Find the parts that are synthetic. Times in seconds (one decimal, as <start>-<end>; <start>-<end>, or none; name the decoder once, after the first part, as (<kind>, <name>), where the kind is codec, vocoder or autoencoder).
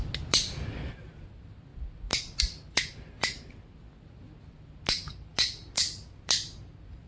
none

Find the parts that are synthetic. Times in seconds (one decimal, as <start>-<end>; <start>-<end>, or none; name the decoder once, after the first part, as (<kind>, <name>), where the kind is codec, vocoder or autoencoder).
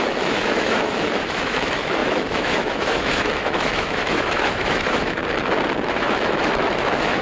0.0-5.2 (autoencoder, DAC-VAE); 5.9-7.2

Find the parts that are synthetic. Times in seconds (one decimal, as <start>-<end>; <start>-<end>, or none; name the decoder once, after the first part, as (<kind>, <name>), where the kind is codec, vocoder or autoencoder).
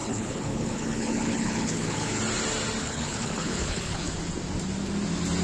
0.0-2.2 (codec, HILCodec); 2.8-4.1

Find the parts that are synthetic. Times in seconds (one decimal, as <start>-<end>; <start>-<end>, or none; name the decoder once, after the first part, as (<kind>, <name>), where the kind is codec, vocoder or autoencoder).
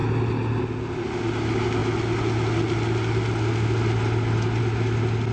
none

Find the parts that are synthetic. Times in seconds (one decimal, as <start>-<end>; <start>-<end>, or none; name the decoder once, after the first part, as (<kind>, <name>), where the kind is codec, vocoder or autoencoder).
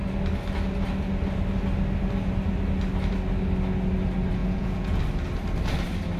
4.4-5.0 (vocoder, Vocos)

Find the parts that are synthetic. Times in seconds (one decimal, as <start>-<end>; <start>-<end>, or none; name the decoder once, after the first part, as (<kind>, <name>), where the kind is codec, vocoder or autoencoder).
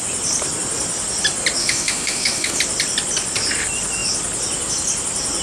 1.6-2.6 (autoencoder, DAC-VAE)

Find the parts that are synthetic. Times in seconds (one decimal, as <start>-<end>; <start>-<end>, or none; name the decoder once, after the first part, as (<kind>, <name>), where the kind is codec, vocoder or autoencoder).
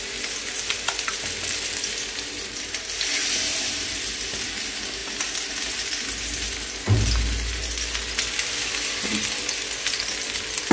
none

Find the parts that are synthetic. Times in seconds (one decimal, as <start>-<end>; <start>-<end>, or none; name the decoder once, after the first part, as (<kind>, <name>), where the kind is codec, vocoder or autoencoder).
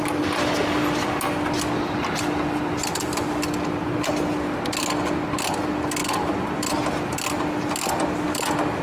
none